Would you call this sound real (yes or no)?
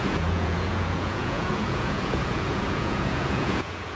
no